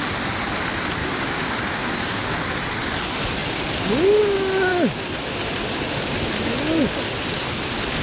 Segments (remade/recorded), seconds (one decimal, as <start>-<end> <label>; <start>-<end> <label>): 0.0-1.0 recorded; 1.0-2.5 remade; 2.5-8.0 recorded